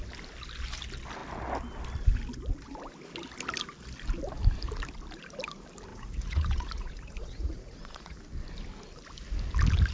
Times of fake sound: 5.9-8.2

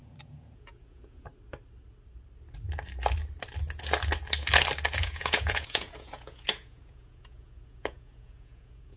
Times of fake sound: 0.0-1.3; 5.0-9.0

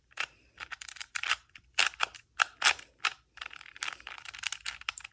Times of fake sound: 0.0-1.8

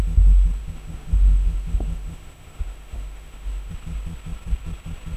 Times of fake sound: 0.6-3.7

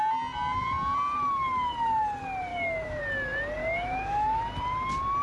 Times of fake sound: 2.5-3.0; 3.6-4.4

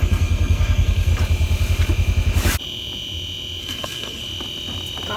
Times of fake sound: 0.0-1.1; 3.6-4.2

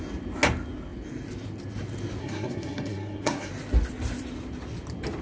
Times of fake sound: 2.2-3.5

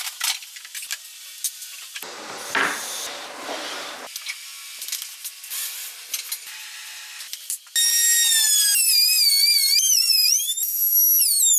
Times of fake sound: none